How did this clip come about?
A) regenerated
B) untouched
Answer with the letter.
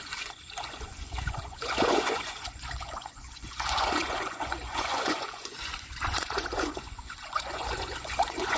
A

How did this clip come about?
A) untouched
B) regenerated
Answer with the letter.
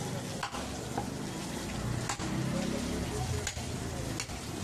A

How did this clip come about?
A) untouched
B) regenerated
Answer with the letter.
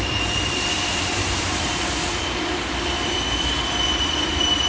B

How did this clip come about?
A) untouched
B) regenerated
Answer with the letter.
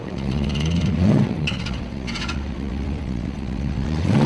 B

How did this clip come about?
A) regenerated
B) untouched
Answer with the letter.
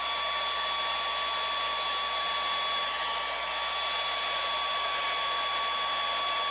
B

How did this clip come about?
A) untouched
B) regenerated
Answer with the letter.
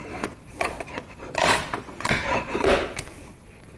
B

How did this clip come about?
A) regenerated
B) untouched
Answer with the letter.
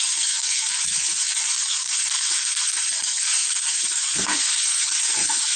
A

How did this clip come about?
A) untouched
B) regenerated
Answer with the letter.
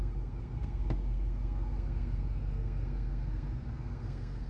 B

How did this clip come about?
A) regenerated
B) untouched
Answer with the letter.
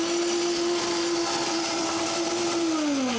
B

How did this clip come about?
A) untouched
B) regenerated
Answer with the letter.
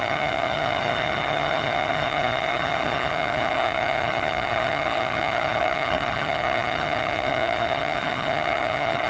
B